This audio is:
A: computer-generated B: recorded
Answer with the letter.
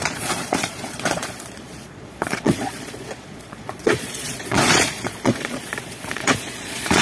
A